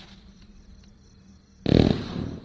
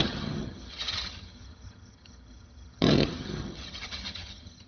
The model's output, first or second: second